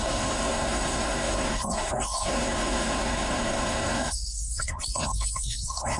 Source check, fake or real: fake